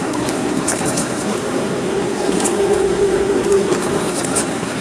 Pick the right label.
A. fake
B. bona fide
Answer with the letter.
A